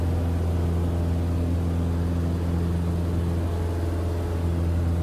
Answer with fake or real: real